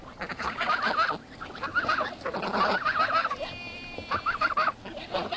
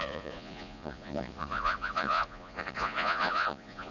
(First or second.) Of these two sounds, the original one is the first